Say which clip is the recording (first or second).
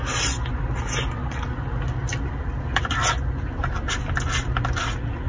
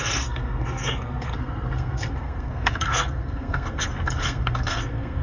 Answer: first